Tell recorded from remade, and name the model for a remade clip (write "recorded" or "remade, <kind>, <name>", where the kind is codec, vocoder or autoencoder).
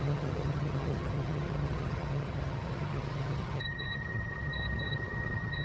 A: remade, vocoder, HiFi-GAN